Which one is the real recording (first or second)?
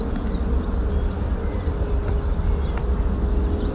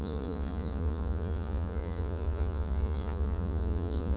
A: first